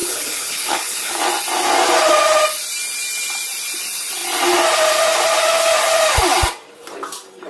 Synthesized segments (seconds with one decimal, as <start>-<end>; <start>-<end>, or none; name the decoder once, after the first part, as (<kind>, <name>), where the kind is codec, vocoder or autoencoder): 0.0-1.2 (codec, HILCodec)